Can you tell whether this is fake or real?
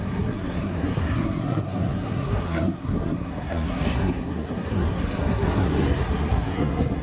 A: fake